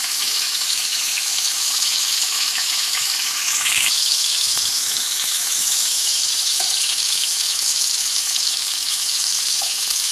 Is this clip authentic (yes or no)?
no